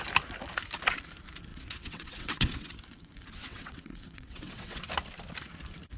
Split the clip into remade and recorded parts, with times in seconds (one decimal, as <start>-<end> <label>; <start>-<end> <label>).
0.0-1.5 recorded; 1.5-2.7 remade; 2.7-3.4 recorded; 3.4-4.9 remade; 4.9-6.0 recorded